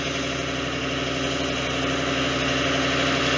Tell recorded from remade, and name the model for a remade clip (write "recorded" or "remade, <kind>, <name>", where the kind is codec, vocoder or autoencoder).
recorded